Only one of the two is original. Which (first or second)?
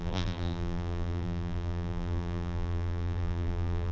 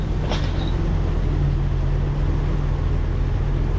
second